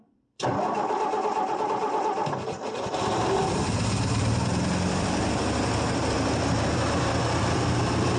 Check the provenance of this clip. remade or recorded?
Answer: remade